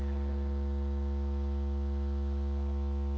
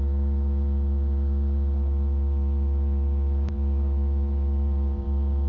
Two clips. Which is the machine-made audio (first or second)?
second